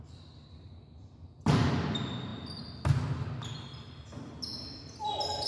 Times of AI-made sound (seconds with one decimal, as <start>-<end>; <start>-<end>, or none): none